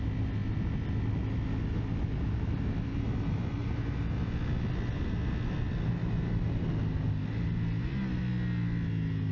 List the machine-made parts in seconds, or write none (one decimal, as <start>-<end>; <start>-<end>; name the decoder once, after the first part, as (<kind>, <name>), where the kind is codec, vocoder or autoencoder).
none